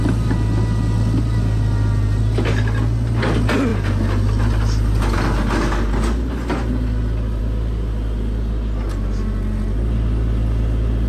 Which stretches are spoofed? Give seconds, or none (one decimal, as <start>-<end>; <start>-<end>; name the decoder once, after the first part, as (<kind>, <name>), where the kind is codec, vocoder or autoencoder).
none